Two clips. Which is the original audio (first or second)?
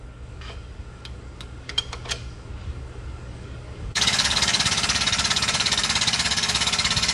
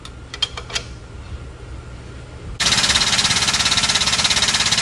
second